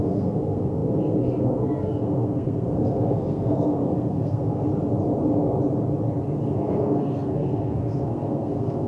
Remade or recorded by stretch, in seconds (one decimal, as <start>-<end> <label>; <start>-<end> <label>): 0.0-4.7 remade; 4.7-6.4 recorded; 6.4-8.9 remade